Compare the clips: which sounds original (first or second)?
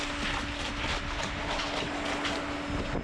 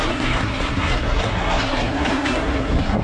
first